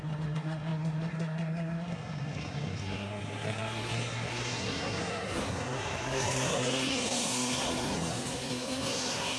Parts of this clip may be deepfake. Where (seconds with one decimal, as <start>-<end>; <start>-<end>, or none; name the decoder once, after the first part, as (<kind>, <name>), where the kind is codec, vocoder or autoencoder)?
0.0-9.4 (codec, SNAC)